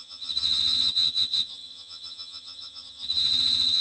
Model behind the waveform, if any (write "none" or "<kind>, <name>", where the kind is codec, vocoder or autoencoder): vocoder, HiFi-GAN